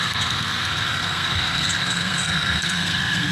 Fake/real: fake